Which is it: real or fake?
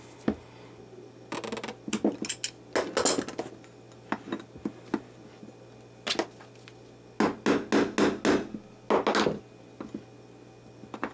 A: real